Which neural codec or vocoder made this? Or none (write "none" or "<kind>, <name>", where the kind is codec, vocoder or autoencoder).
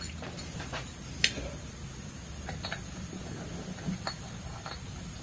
none